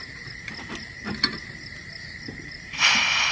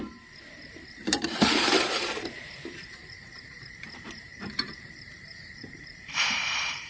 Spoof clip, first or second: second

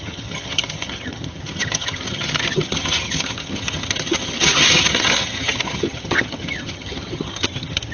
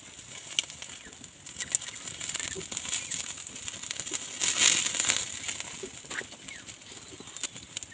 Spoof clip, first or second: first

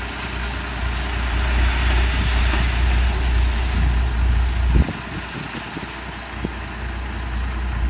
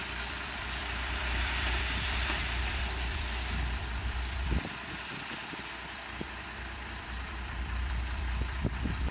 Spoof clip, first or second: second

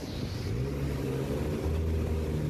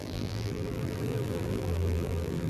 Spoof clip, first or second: second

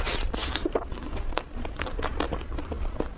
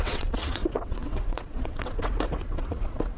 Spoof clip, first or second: second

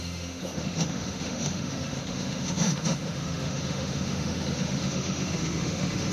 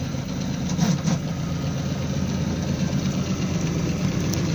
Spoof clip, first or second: first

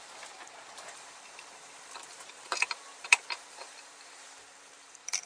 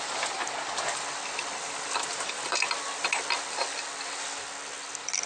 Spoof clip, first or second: first